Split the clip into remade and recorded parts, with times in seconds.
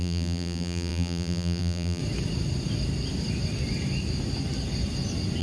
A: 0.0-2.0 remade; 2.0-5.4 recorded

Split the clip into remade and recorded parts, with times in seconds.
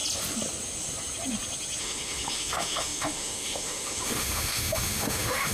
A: 0.0-1.8 recorded; 1.8-5.5 remade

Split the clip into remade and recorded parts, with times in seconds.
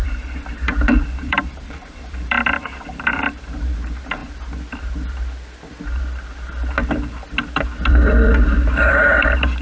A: 0.0-4.2 remade; 4.2-8.8 recorded; 8.8-9.6 remade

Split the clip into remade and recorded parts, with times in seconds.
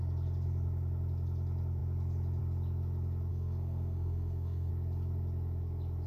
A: 0.0-3.3 recorded; 3.3-4.7 remade; 4.7-6.1 recorded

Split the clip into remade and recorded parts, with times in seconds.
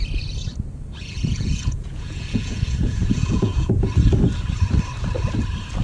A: 0.0-1.0 recorded; 1.0-3.9 remade; 3.9-5.8 recorded